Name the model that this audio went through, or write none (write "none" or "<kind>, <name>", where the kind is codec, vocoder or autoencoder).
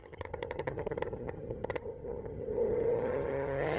vocoder, HiFi-GAN